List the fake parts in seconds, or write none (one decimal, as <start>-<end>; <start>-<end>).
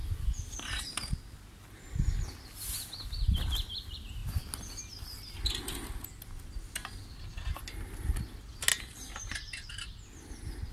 none